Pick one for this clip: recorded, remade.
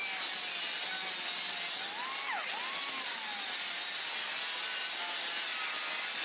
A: recorded